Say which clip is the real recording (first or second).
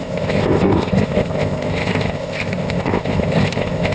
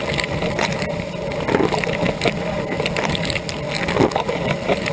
second